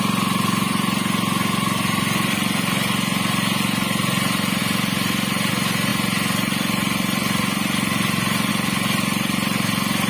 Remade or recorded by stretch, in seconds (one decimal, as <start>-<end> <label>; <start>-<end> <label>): 0.0-10.1 recorded